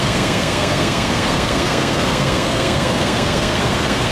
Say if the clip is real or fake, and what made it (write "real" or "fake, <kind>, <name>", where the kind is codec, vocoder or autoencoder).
fake, codec, SNAC